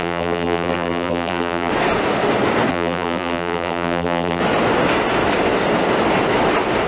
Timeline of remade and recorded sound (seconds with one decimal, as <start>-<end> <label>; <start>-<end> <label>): 0.0-1.7 remade; 1.7-2.7 recorded; 2.7-4.4 remade; 4.4-6.9 recorded